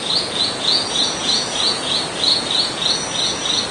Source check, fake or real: fake